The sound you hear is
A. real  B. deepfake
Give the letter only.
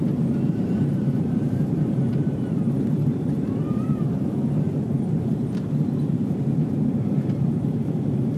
B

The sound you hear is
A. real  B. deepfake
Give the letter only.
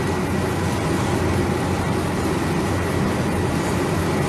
A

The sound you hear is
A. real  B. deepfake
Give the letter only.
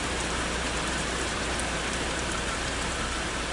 B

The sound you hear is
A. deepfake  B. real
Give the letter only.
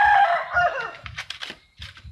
A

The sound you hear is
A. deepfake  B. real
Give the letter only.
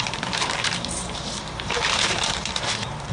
A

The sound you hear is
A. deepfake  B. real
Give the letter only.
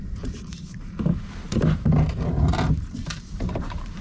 A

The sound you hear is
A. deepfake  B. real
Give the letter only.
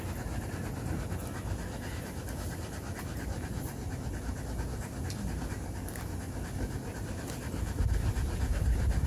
B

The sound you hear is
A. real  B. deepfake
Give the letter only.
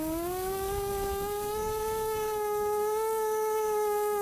B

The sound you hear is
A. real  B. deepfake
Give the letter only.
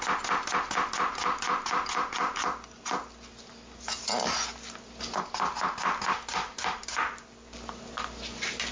A